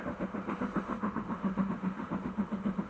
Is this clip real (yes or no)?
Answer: no